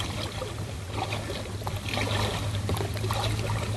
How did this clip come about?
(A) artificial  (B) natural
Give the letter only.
B